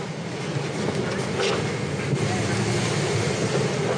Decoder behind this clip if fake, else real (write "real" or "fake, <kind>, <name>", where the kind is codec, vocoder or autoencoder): real